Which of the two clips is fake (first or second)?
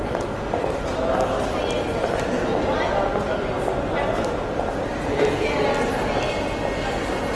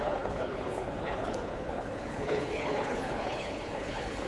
second